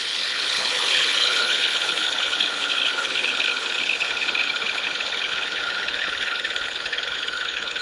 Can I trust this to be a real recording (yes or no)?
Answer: no